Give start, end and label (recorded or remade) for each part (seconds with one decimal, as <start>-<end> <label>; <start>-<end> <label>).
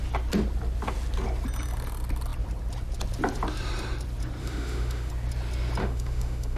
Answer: 0.0-4.4 recorded; 4.4-5.1 remade; 5.1-5.8 recorded; 5.8-6.6 remade